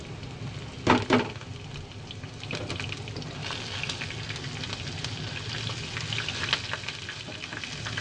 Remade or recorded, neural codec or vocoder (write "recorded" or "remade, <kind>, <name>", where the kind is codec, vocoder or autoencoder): recorded